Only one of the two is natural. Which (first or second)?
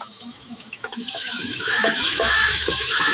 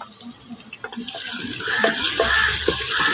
second